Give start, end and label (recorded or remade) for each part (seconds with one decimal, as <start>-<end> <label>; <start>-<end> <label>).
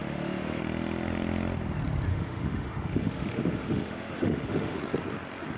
0.0-0.6 remade; 0.6-2.1 recorded; 2.1-4.8 remade; 4.8-5.6 recorded